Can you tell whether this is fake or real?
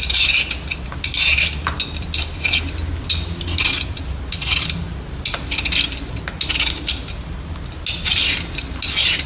real